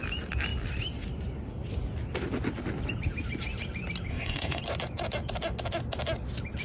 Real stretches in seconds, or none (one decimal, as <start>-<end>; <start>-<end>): 0.0-4.1; 4.6-6.6